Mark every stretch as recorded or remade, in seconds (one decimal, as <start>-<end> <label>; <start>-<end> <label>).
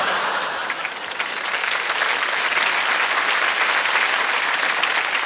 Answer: 0.0-0.6 remade; 0.6-3.8 recorded; 3.8-5.3 remade